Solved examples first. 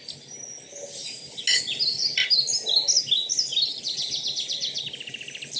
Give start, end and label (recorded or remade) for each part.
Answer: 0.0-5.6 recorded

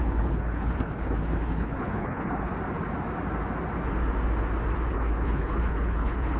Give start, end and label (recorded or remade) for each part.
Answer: 0.0-2.5 remade; 2.5-4.9 recorded; 4.9-6.4 remade

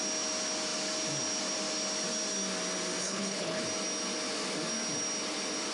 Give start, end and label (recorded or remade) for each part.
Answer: 0.0-3.0 recorded; 3.0-3.6 remade; 3.6-5.7 recorded